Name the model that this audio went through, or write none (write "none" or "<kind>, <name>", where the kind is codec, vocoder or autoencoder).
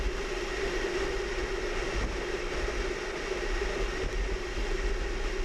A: none